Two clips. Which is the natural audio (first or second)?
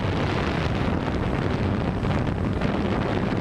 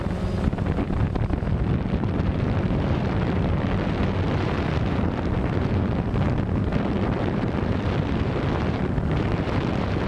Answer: first